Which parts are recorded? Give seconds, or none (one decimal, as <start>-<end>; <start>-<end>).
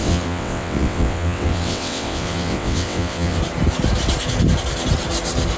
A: 3.4-5.6